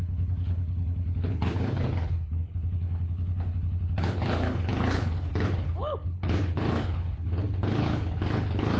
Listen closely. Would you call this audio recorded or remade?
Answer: remade